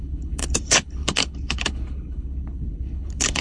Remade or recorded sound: remade